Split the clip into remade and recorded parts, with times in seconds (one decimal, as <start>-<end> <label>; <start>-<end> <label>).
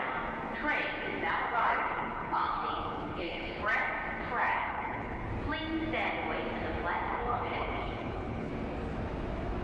0.0-1.7 recorded; 1.7-3.6 remade; 3.6-4.4 recorded; 4.4-5.3 remade; 5.3-7.1 recorded; 7.1-8.5 remade; 8.5-9.6 recorded